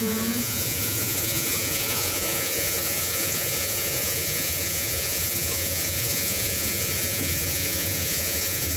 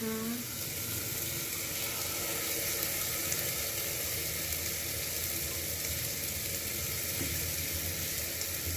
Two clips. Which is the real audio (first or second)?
second